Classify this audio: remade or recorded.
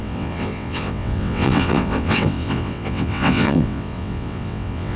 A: remade